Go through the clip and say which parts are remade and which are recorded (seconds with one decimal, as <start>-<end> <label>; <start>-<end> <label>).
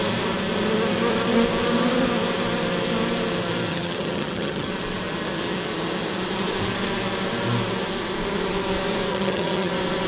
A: 0.0-3.7 recorded; 3.7-4.7 remade; 4.7-9.1 recorded; 9.1-9.7 remade; 9.7-10.1 recorded